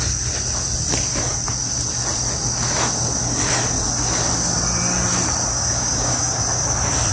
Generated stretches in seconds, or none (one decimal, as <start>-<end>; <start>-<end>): 5.5-6.4